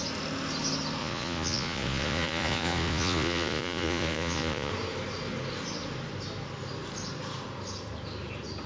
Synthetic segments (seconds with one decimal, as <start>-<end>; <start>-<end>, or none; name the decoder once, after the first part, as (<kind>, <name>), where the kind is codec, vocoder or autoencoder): 1.0-4.7 (vocoder, Vocos)